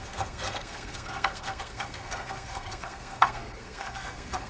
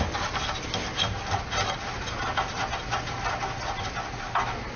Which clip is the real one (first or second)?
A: second